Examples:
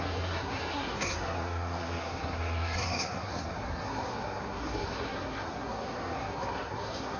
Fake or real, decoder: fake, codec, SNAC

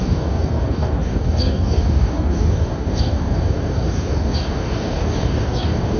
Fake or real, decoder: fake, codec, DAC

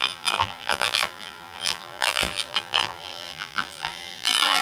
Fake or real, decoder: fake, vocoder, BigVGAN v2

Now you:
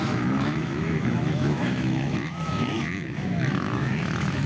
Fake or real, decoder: fake, autoencoder, DAC-VAE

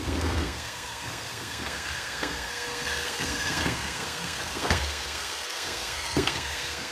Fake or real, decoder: fake, codec, SNAC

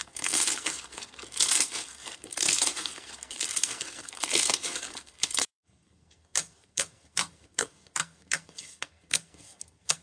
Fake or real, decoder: fake, codec, SNAC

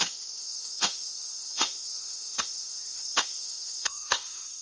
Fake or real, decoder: fake, autoencoder, DAC-VAE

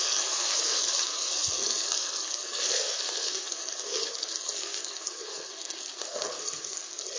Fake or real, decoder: fake, codec, SNAC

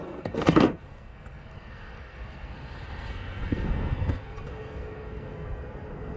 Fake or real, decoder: fake, codec, SNAC